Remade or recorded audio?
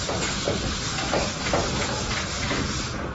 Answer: recorded